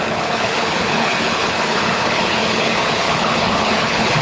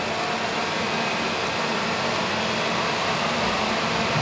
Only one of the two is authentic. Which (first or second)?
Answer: second